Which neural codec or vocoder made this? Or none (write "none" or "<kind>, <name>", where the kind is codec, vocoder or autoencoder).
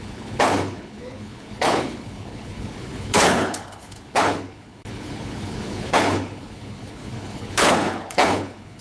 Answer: codec, HILCodec